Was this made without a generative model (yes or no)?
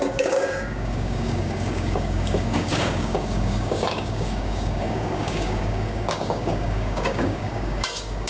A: no